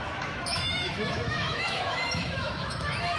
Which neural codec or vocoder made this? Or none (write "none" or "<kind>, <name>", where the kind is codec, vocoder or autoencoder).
autoencoder, DAC-VAE